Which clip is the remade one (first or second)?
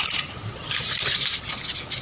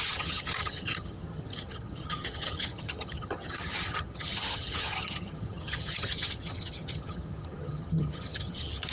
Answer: second